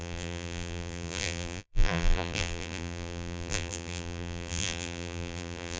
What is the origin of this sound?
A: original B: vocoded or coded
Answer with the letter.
B